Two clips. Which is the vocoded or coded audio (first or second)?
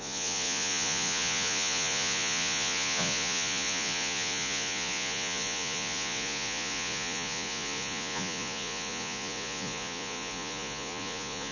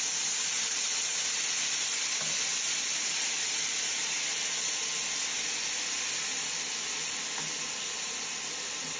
first